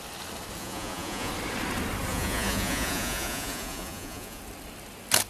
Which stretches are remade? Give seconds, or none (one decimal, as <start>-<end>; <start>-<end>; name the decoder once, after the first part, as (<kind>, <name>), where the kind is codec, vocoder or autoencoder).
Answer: 0.6-1.3 (vocoder, Vocos); 2.1-4.4